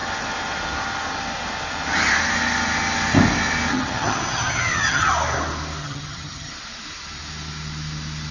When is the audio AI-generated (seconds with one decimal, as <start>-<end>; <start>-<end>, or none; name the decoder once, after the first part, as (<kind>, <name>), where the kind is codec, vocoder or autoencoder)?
3.7-5.1 (vocoder, HiFi-GAN); 5.8-6.5